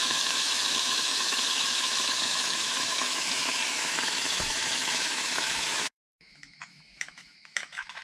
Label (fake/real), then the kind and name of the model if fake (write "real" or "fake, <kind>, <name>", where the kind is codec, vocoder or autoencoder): fake, autoencoder, DAC-VAE